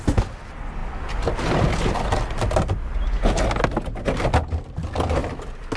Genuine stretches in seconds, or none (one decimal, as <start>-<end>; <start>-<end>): 0.0-5.8